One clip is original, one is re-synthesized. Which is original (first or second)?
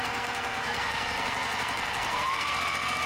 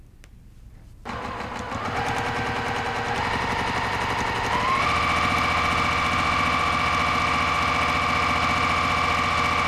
second